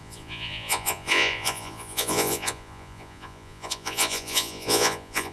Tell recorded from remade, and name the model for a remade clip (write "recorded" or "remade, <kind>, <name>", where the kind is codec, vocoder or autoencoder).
remade, vocoder, Vocos